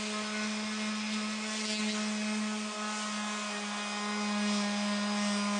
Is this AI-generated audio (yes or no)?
no